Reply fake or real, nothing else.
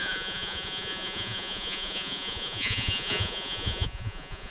fake